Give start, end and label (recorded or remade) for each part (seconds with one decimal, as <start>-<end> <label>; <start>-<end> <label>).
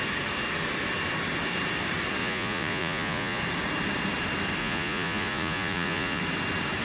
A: 0.0-2.2 recorded; 2.2-3.4 remade; 3.4-4.6 recorded; 4.6-6.2 remade; 6.2-6.8 recorded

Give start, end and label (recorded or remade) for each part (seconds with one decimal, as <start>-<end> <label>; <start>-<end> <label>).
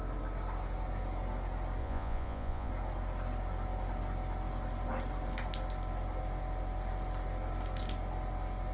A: 0.0-1.8 recorded; 1.8-2.7 remade; 2.7-8.7 recorded